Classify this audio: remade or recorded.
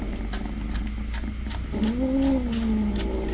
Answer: recorded